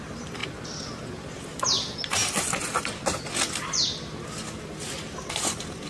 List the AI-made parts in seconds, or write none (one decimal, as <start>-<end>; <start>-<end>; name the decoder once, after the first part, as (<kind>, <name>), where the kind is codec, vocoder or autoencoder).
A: none